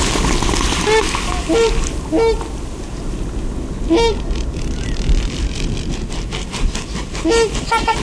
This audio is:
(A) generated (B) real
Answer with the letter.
B